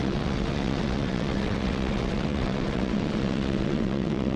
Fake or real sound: fake